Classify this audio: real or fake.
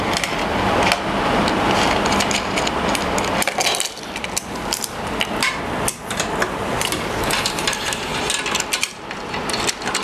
real